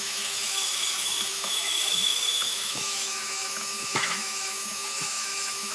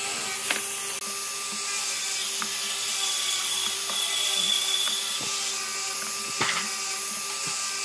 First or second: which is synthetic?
first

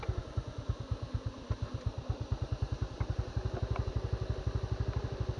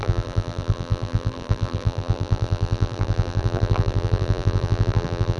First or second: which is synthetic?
second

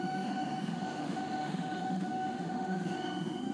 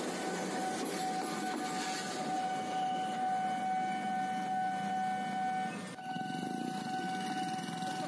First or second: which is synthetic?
first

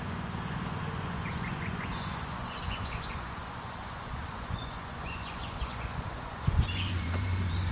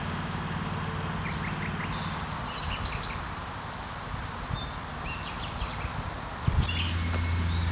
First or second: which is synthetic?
first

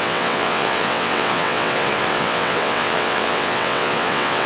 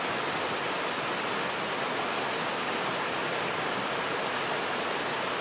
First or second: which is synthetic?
first